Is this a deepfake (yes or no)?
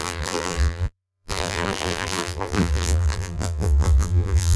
yes